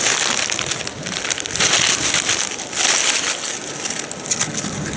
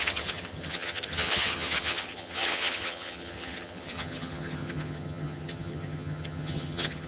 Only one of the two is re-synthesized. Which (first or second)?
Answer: second